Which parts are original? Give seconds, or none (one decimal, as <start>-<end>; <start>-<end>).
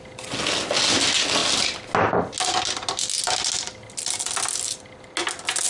0.0-5.7